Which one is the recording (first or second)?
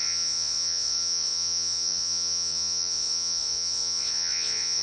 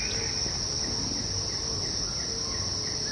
second